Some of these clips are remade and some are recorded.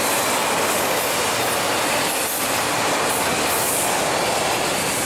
recorded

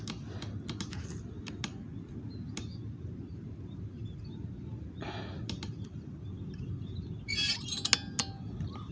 recorded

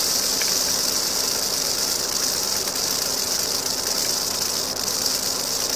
recorded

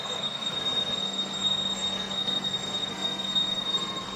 remade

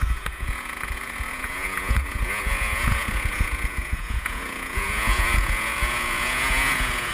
remade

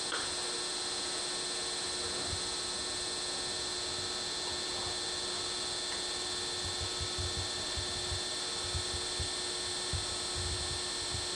recorded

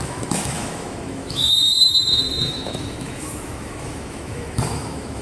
remade